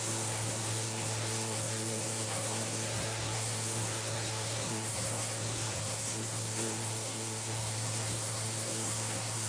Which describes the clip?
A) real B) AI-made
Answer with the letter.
B